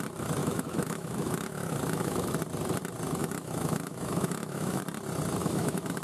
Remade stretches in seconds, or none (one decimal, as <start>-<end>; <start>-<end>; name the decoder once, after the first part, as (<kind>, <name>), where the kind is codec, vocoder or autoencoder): 0.4-2.3 (autoencoder, DAC-VAE); 3.2-4.8; 5.4-6.0